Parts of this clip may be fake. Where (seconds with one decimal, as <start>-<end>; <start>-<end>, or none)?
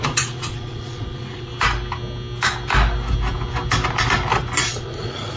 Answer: 0.0-1.5; 4.7-5.4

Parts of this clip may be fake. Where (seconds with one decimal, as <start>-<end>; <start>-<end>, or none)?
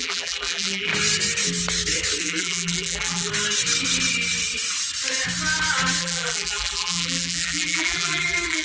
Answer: 0.0-0.9; 2.2-3.3; 6.0-8.6